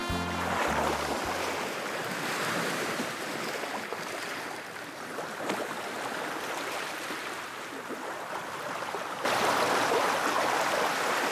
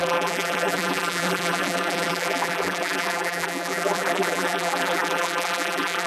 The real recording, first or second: first